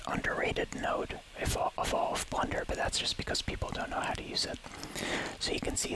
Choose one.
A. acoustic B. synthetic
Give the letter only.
B